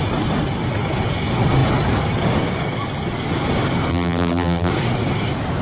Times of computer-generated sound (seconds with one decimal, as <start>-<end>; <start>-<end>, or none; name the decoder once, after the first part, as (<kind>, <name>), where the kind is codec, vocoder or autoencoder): 3.9-4.7 (vocoder, BigVGAN v2)